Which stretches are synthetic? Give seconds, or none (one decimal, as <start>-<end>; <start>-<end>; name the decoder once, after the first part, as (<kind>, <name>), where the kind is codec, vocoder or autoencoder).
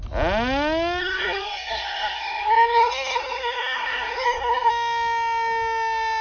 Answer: 1.0-4.7 (codec, SNAC)